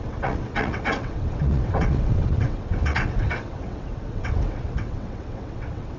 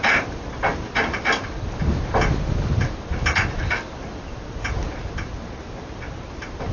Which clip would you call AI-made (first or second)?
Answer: first